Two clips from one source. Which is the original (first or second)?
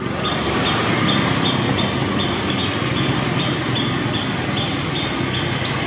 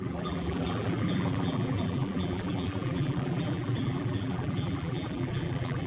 first